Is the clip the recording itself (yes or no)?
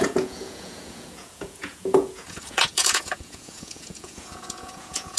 no